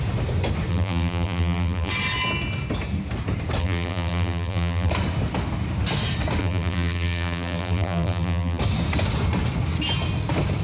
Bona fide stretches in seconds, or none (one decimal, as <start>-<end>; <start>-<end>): 0.0-0.7; 1.9-3.6; 4.9-6.4; 8.6-10.6